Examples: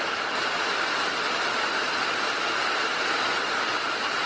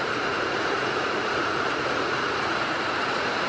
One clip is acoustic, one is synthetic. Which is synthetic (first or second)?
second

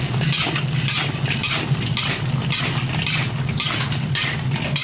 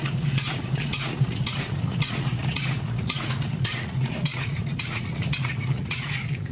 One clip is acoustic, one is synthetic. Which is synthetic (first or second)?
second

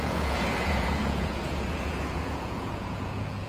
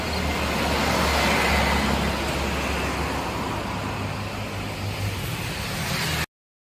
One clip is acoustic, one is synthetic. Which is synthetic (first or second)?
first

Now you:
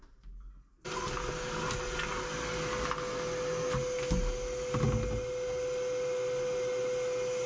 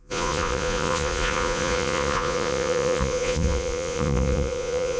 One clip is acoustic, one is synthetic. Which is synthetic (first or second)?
second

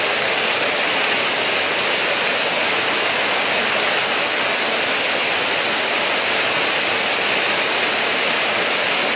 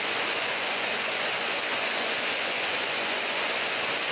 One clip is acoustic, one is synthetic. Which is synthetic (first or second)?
second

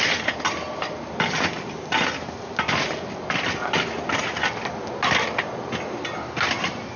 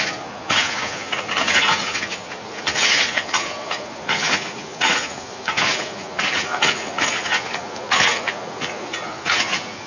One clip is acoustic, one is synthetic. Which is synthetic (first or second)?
second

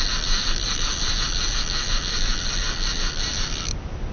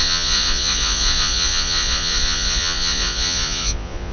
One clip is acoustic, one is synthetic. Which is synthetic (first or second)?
second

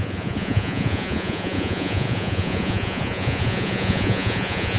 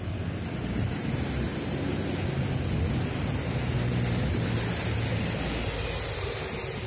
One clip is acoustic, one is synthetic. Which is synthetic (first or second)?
first